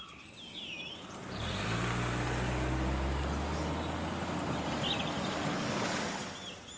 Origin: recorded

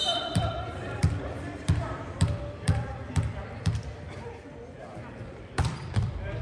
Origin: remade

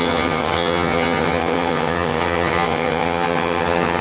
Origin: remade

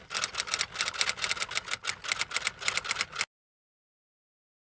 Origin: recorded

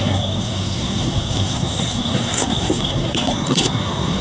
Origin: remade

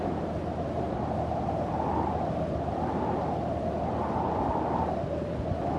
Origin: recorded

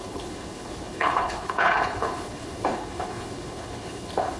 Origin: remade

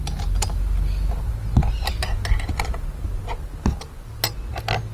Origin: recorded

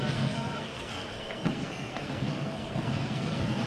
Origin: remade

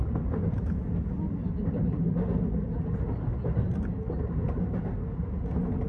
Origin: recorded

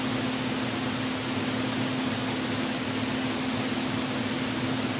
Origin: recorded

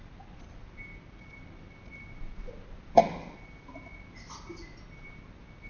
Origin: recorded